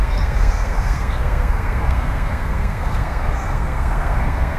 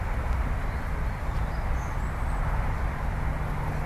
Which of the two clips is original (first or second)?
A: second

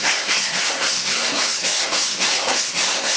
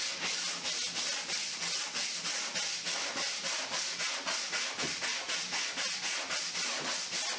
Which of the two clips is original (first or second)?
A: second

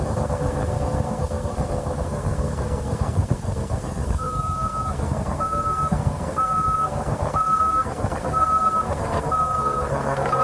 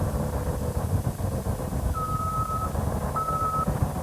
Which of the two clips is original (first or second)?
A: second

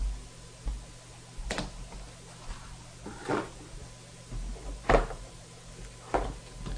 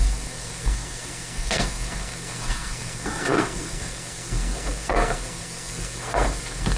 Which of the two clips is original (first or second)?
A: first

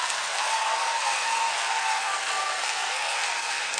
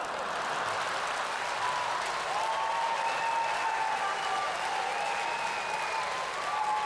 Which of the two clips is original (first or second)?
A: second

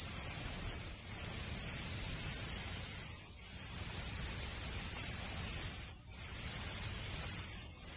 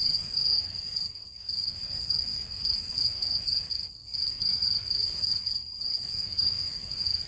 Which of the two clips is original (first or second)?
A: first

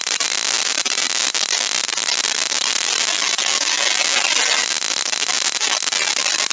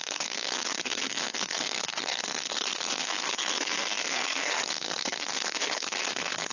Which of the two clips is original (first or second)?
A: first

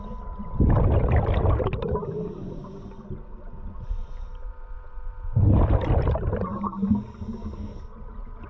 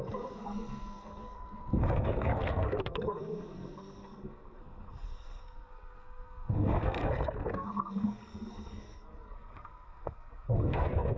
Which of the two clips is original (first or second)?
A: first